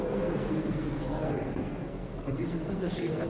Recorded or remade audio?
remade